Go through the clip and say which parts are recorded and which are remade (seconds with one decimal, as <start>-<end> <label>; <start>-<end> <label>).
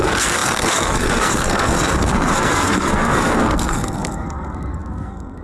0.0-5.4 remade